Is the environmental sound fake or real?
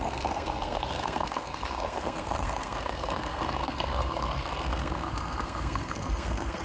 fake